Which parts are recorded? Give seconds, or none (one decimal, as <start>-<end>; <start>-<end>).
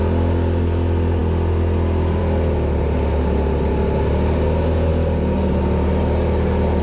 0.0-6.8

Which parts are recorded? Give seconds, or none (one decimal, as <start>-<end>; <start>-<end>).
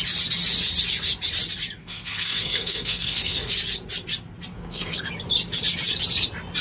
0.0-1.8; 3.5-4.5; 5.1-6.6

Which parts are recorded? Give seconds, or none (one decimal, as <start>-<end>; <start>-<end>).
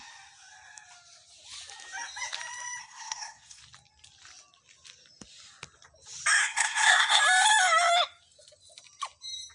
0.0-2.8; 3.6-6.4; 7.2-9.5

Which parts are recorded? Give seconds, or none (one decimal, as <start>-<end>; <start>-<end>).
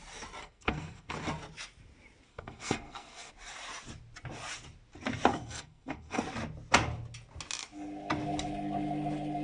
0.0-0.4; 1.1-2.3; 3.3-5.3; 6.2-9.4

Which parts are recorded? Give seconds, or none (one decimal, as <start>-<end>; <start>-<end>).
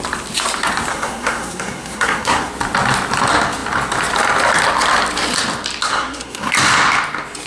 0.0-0.9; 2.5-5.8; 6.5-7.5